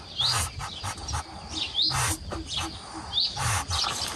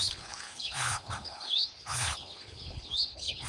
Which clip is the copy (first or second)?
second